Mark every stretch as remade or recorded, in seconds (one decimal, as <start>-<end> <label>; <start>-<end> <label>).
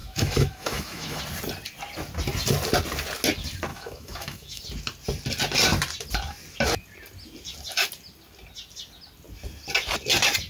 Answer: 0.0-1.2 remade; 1.2-3.7 recorded; 3.7-4.6 remade; 4.6-10.5 recorded